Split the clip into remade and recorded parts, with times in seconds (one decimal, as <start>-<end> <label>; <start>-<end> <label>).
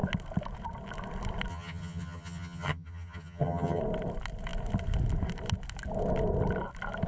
0.0-1.5 recorded; 1.5-3.8 remade; 3.8-7.1 recorded